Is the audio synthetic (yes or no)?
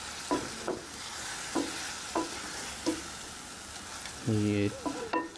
no